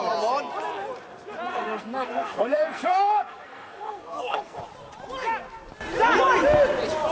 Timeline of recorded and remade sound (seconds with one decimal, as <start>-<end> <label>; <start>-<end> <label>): 0.0-1.5 recorded; 1.5-4.6 remade; 4.6-7.1 recorded